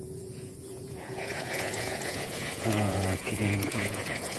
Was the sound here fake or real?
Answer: fake